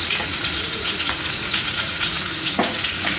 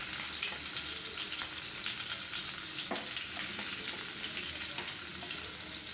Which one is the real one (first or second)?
second